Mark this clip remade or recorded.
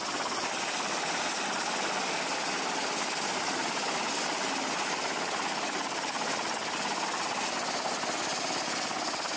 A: recorded